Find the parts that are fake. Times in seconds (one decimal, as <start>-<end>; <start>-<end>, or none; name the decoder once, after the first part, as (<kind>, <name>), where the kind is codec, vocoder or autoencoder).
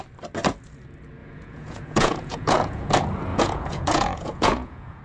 1.2-2.9 (vocoder, Vocos); 3.3-5.0